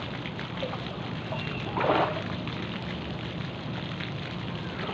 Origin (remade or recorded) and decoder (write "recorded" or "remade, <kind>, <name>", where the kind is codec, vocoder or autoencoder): recorded